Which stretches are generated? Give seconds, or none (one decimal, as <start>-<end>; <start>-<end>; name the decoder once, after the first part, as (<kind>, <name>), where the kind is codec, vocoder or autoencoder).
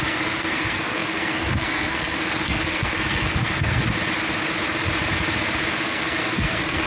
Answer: 0.0-3.8 (codec, SNAC); 5.7-6.9